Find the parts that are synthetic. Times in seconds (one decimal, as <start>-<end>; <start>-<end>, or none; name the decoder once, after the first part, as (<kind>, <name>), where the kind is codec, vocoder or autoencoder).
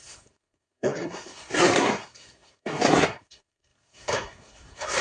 0.0-5.0 (codec, SNAC)